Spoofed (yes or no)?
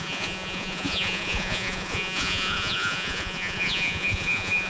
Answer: yes